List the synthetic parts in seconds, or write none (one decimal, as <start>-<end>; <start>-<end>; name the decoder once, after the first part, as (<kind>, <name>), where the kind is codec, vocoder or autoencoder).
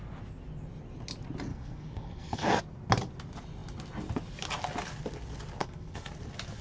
1.5-2.6 (codec, SNAC); 5.6-6.1